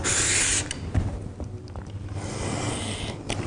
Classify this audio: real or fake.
real